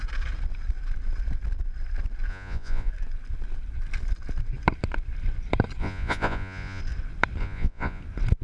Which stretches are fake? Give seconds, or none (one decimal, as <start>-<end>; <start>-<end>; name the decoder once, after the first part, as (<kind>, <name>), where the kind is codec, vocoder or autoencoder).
2.3-2.9 (vocoder, Vocos); 5.8-6.8; 7.4-8.0